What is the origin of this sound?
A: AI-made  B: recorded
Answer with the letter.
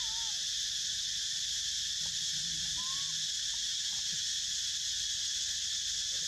B